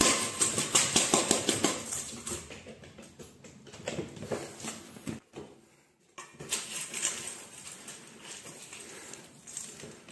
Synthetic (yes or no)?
no